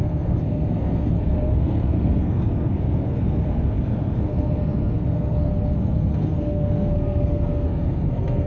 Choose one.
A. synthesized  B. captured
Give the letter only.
A